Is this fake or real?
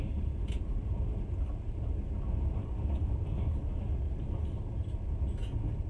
real